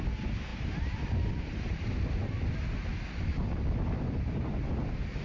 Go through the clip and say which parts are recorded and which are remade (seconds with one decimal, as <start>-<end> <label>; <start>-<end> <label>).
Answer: 0.0-5.2 recorded